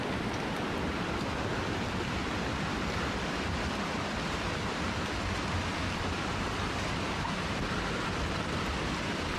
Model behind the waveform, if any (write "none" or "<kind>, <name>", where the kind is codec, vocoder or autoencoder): none